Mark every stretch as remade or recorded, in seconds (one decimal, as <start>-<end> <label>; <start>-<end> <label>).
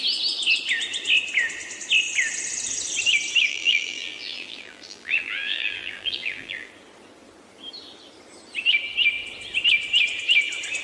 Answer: 0.0-3.5 recorded; 3.5-6.7 remade; 6.7-10.8 recorded